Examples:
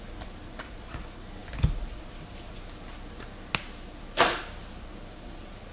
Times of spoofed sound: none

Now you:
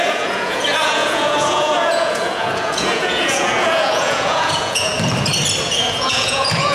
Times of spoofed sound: 0.0-4.9; 5.6-6.7

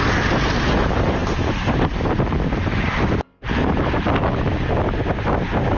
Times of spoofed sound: none

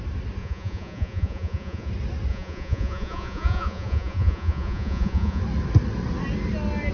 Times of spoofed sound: 0.4-1.9; 2.3-5.4

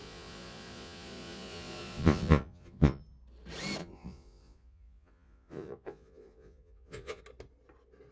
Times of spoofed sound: 0.0-3.0; 3.8-7.2